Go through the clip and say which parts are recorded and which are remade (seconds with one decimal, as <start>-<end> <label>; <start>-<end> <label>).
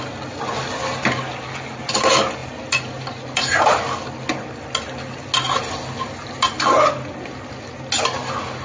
0.0-8.6 recorded